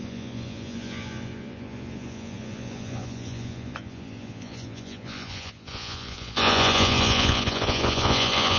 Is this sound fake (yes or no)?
yes